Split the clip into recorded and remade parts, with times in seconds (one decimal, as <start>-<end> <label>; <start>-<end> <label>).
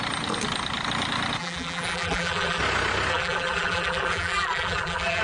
0.0-1.4 recorded; 1.4-2.6 remade; 2.6-3.1 recorded; 3.1-5.2 remade